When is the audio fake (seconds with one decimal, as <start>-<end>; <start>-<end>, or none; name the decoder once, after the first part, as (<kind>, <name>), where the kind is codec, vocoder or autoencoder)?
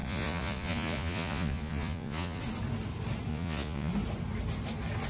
0.0-2.4 (vocoder, Vocos); 3.3-3.9